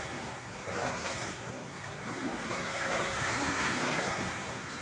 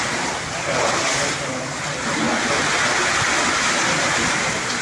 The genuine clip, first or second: second